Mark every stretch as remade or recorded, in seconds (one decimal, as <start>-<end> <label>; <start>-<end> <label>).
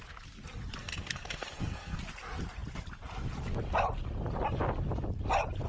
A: 0.0-0.8 recorded; 0.8-2.0 remade; 2.0-5.7 recorded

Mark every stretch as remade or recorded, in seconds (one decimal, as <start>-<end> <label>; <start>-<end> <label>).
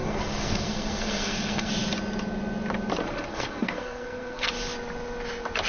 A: 0.0-1.7 remade; 1.7-3.3 recorded; 3.3-4.5 remade; 4.5-5.7 recorded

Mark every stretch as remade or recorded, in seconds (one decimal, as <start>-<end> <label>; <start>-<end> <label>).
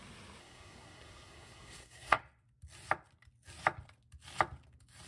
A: 0.0-0.4 recorded; 0.4-2.2 remade; 2.2-5.1 recorded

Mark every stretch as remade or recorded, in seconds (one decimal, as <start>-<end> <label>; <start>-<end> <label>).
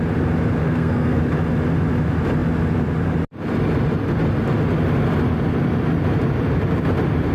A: 0.0-0.6 recorded; 0.6-1.2 remade; 1.2-7.3 recorded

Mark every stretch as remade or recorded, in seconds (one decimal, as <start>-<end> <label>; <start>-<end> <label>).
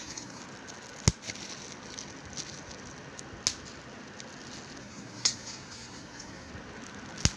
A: 0.0-0.4 remade; 0.4-4.8 recorded; 4.8-6.5 remade; 6.5-7.4 recorded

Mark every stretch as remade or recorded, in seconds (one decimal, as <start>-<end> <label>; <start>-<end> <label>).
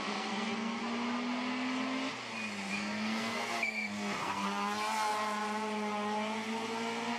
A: 0.0-0.8 remade; 0.8-2.7 recorded; 2.7-5.1 remade; 5.1-7.2 recorded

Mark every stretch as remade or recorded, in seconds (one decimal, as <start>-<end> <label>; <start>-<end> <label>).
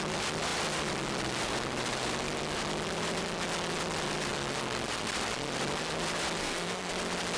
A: 0.0-6.4 recorded; 6.4-6.9 remade; 6.9-7.4 recorded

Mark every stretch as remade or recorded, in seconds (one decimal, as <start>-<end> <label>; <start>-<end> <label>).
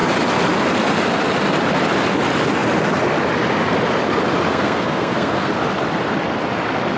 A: 0.0-4.5 recorded; 4.5-5.5 remade; 5.5-7.0 recorded